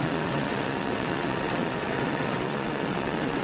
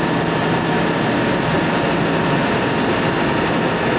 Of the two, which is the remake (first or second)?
first